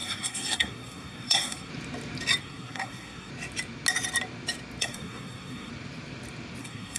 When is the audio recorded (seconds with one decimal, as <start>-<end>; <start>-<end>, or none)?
1.7-2.4; 3.3-4.8; 5.7-6.6